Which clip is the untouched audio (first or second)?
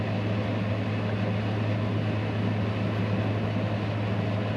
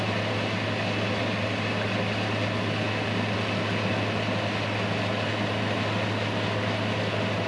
first